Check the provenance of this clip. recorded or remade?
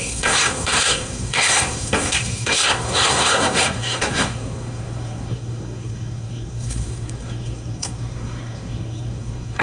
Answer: remade